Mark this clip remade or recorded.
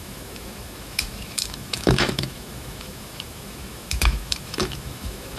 remade